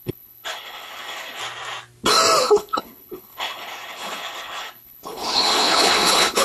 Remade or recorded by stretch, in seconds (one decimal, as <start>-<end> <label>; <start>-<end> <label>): 0.0-1.4 remade; 1.4-2.4 recorded; 2.4-6.4 remade